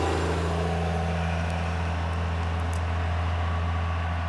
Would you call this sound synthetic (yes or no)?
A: no